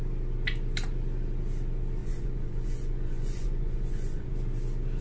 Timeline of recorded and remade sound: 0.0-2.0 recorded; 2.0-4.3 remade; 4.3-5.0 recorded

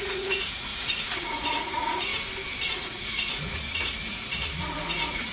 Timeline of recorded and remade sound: 0.0-2.1 remade; 2.1-2.7 recorded; 2.7-5.3 remade

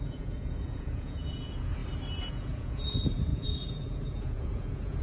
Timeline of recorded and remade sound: 0.0-1.8 remade; 1.8-2.3 recorded; 2.3-5.0 remade

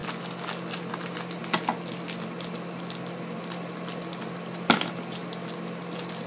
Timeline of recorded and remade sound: 0.0-6.3 recorded